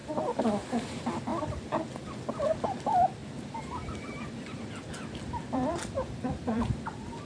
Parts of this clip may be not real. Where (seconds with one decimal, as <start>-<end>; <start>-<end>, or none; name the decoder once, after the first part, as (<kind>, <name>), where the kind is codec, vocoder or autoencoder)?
0.9-7.3 (vocoder, BigVGAN v2)